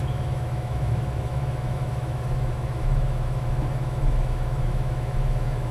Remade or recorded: remade